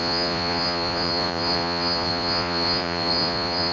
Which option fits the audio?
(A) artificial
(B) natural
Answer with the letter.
A